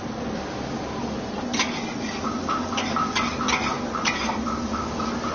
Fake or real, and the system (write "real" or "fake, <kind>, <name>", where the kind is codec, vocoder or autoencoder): real